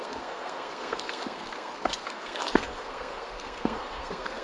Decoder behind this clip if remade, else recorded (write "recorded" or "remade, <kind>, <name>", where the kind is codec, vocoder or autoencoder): remade, codec, SNAC